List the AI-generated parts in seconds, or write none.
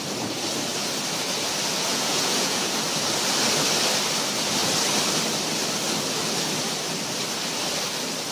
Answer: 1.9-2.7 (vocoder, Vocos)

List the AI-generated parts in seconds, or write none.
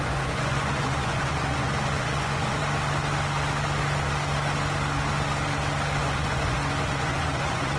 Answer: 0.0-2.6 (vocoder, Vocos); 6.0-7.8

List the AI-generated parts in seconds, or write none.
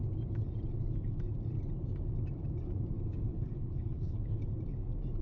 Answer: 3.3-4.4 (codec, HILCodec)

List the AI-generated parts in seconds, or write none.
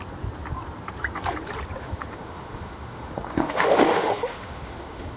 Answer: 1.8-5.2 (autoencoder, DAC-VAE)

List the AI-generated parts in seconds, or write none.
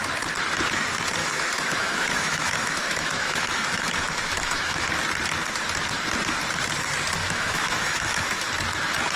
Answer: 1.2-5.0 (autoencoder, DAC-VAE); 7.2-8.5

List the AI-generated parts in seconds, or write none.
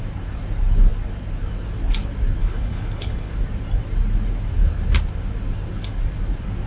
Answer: 2.4-3.3 (codec, HILCodec)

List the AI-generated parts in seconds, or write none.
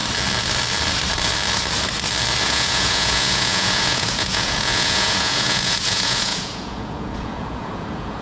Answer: 2.4-8.2 (vocoder, Vocos)